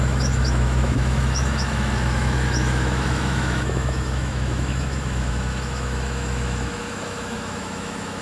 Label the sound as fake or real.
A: fake